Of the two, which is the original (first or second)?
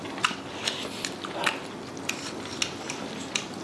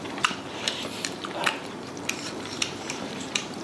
first